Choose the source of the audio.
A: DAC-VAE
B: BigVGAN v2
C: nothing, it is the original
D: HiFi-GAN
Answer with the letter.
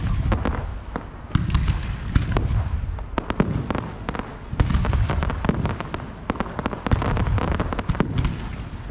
C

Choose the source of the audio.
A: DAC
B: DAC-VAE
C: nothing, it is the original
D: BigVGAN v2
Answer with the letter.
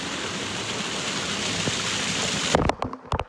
C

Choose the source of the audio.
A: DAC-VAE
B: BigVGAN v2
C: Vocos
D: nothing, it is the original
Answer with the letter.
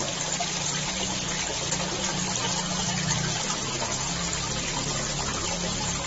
D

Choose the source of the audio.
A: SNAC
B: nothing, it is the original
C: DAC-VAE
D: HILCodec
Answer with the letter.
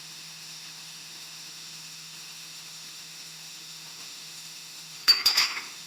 C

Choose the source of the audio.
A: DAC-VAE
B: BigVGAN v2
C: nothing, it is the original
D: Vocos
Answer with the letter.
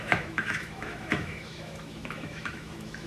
A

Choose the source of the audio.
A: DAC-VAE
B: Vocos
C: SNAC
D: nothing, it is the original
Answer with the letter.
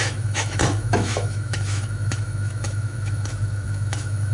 A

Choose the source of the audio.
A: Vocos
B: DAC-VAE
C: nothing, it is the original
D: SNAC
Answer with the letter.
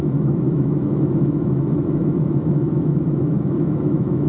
B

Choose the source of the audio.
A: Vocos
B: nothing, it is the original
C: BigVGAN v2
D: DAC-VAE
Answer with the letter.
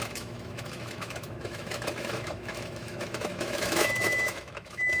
D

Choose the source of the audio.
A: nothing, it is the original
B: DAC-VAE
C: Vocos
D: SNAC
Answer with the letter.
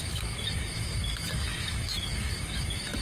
B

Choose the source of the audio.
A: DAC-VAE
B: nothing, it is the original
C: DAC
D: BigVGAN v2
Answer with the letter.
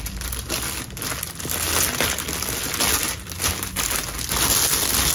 B